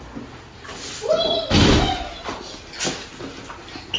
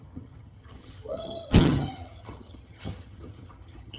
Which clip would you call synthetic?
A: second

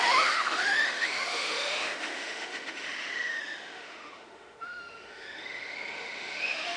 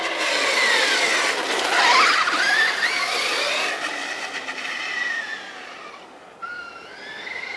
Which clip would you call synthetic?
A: first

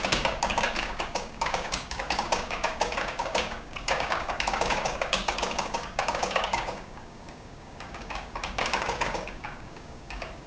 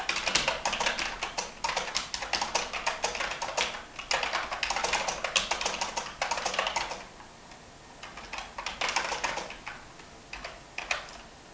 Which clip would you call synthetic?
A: first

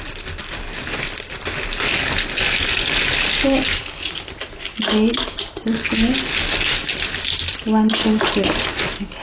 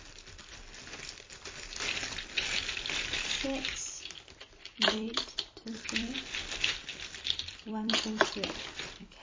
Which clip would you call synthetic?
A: second